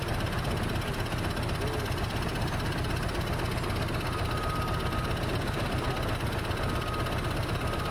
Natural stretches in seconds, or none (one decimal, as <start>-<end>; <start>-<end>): 0.0-7.9